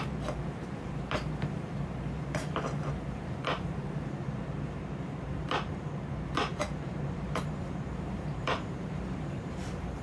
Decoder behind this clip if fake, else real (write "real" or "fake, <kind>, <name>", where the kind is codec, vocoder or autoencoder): fake, vocoder, BigVGAN v2